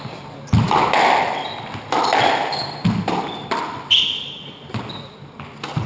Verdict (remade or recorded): recorded